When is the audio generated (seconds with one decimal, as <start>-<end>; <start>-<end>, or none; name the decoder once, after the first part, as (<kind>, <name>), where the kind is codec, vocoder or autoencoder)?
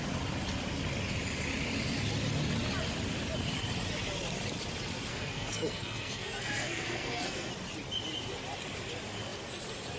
5.1-7.5 (codec, SNAC)